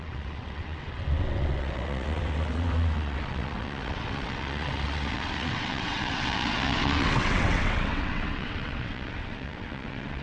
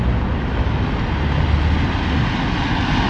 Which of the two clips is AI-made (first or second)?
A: first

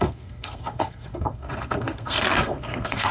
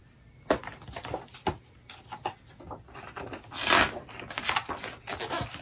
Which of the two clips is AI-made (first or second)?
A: first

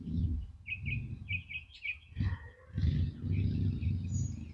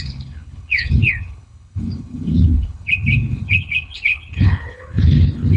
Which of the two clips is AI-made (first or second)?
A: second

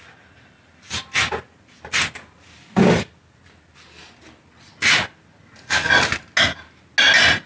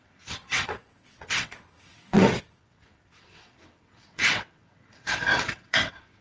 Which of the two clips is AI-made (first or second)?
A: second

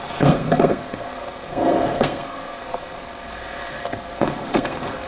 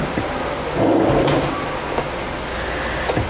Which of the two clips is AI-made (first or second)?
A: first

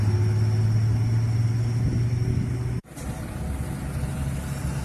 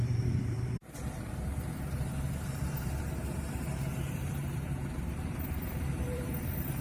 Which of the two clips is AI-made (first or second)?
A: second